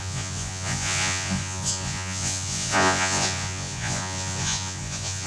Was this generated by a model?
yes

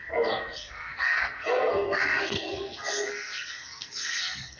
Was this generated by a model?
yes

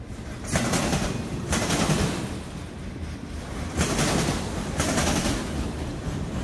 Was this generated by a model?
no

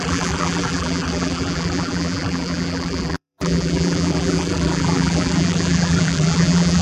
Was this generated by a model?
yes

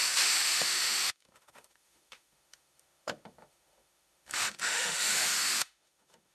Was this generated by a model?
yes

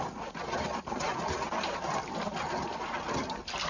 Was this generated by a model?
no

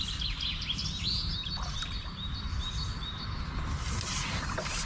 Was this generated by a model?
no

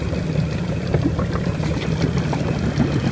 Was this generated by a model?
no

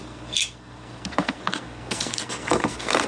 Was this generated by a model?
yes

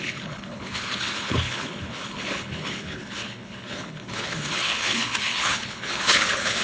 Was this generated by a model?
yes